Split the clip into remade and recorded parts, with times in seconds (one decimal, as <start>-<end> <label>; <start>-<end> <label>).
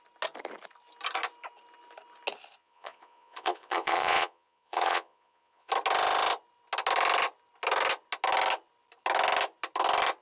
0.0-2.6 recorded; 2.6-5.7 remade; 5.7-10.2 recorded